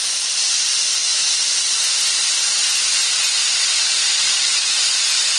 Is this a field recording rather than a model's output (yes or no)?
yes